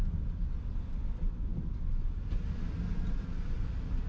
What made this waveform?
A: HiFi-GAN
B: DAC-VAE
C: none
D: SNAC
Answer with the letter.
C